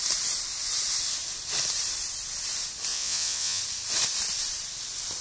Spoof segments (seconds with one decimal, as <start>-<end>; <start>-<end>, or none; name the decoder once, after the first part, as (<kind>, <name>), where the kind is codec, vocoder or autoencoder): 2.9-3.6 (vocoder, Vocos)